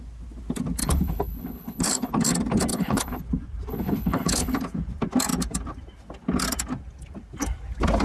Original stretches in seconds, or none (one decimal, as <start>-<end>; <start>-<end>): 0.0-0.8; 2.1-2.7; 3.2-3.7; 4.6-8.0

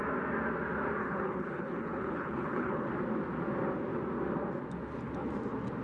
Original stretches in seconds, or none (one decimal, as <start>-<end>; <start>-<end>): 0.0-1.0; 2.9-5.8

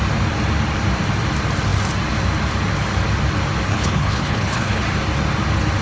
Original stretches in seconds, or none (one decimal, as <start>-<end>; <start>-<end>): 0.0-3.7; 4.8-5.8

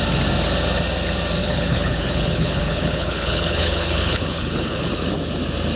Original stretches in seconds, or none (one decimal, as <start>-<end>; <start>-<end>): 0.0-1.4; 4.9-5.8

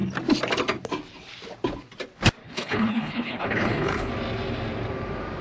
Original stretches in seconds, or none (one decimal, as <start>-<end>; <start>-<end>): 0.0-2.4; 4.1-5.4

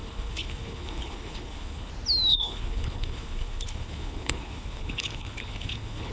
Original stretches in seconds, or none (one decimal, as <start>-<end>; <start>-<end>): 1.9-2.3

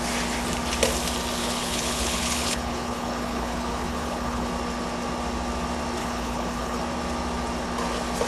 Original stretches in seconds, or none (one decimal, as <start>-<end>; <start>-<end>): 0.0-1.4; 4.5-6.0; 6.8-8.3